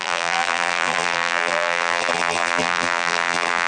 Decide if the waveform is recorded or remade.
remade